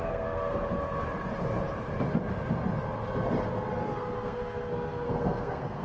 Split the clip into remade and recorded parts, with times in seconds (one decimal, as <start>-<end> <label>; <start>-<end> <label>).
0.0-0.6 remade; 0.6-3.8 recorded; 3.8-5.8 remade